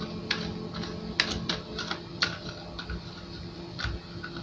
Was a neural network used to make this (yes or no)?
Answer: no